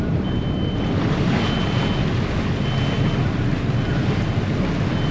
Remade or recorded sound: recorded